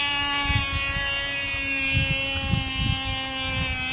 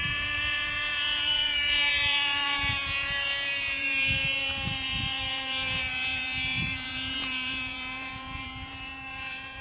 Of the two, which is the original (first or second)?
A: first